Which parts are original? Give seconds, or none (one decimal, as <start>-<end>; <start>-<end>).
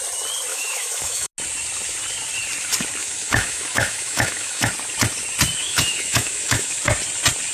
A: 0.0-0.5; 1.3-3.0; 4.7-5.6; 6.8-7.5